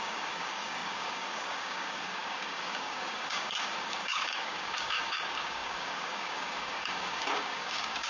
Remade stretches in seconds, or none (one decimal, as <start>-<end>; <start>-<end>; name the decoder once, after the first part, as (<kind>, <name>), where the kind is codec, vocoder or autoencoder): 0.0-8.1 (codec, DAC)